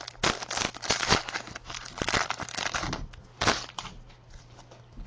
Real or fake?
real